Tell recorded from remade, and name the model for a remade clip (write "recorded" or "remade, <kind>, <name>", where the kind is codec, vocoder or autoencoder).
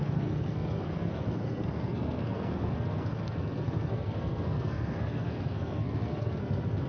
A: remade, codec, SNAC